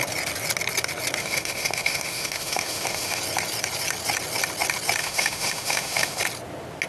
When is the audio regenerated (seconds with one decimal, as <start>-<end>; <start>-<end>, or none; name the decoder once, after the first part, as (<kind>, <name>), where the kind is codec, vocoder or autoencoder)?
1.2-3.2 (autoencoder, DAC-VAE); 5.0-6.2